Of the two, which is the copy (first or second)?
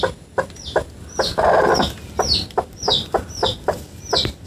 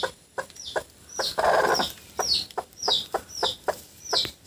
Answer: second